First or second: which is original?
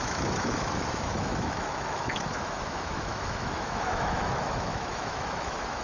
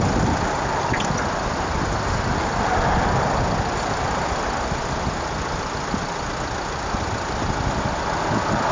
second